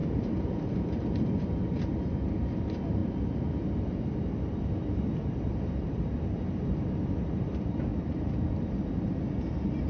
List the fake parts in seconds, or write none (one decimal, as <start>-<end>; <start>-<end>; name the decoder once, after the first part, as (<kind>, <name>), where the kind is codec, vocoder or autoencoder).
0.0-9.9 (vocoder, BigVGAN v2)